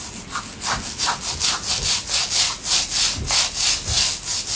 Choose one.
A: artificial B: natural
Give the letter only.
B